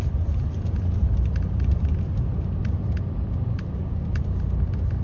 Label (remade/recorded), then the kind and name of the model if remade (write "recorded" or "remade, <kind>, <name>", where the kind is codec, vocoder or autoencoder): remade, vocoder, BigVGAN v2